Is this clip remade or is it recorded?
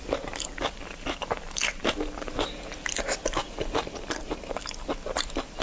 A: recorded